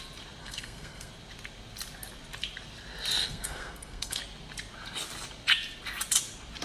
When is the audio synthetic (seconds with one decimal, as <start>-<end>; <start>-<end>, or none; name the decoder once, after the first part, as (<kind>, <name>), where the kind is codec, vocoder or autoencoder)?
0.4-1.1 (codec, SNAC); 3.2-4.2